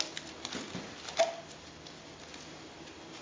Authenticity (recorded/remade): recorded